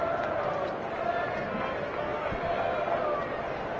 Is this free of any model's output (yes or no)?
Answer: yes